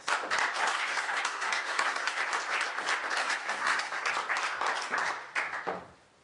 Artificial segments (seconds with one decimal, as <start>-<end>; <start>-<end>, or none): 0.6-2.2; 3.2-4.1